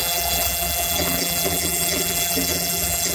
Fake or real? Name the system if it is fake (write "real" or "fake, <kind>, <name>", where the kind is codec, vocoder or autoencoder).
fake, vocoder, BigVGAN v2